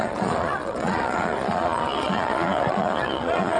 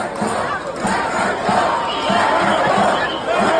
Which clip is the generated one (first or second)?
first